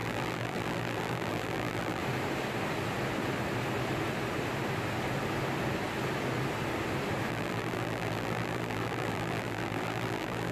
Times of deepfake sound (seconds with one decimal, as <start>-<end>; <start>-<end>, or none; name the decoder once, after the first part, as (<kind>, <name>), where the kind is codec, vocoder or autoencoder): 0.0-2.0 (vocoder, BigVGAN v2); 7.3-10.5